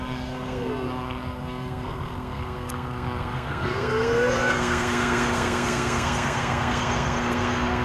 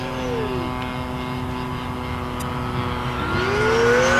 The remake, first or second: first